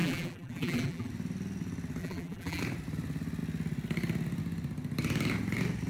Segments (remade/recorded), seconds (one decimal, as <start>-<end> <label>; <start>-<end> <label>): 0.0-1.1 remade; 1.1-2.0 recorded; 2.0-2.6 remade; 2.6-5.9 recorded